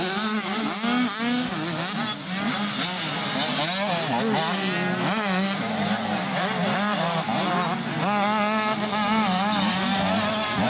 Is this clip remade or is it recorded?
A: recorded